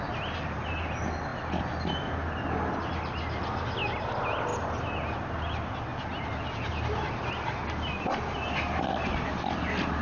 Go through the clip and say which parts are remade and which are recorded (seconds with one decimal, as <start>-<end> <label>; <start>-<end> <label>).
0.0-10.0 recorded